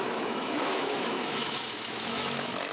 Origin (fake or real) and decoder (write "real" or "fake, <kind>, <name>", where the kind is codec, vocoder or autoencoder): fake, autoencoder, DAC-VAE